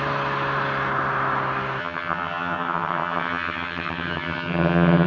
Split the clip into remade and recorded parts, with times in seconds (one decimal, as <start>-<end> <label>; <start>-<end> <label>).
0.0-1.8 recorded; 1.8-5.1 remade